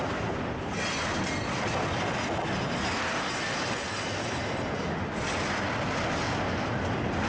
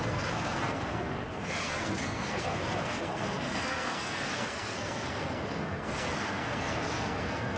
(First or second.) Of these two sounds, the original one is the first